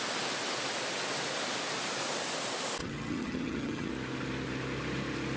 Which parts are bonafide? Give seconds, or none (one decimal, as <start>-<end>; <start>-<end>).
0.0-2.8; 3.9-5.4

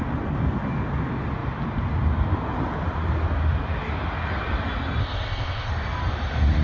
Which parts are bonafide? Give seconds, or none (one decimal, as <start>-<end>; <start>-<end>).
0.0-5.0; 5.7-6.6

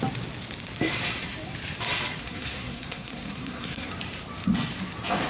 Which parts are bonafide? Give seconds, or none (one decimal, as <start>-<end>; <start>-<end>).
0.0-2.2; 3.9-5.3

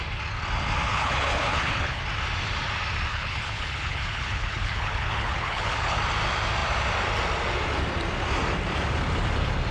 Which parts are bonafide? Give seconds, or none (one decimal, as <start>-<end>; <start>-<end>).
0.0-0.9; 2.0-3.1; 6.0-9.7